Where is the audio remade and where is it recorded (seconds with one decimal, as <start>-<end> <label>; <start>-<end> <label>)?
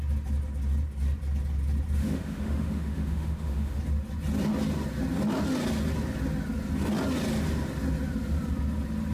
0.0-2.0 recorded; 2.0-3.8 remade; 3.8-9.1 recorded